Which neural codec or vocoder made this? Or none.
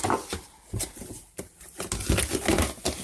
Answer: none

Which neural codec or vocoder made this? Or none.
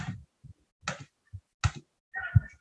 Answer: none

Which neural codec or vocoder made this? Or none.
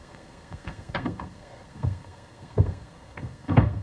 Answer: codec, SNAC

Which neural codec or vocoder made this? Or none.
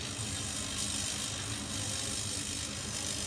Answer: none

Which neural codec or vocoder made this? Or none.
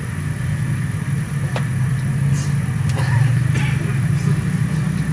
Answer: none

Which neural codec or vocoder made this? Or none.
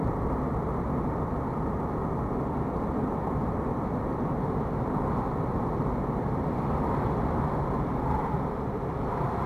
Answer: none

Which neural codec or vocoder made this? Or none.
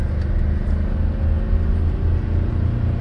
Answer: none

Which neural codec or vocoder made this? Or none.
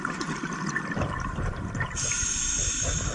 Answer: none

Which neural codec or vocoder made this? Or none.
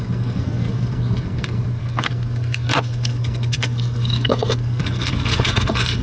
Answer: codec, SNAC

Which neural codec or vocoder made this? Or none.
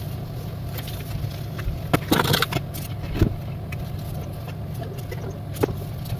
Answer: none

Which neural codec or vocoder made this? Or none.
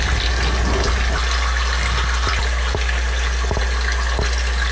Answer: none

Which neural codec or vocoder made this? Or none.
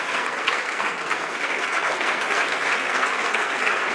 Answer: codec, SNAC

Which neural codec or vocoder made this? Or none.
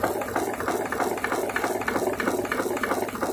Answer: none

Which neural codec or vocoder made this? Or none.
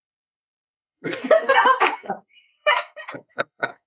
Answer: codec, SNAC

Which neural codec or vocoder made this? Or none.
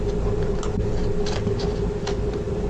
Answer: none